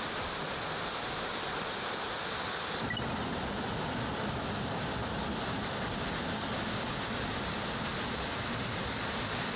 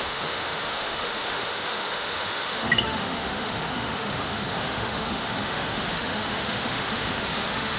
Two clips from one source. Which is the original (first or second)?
first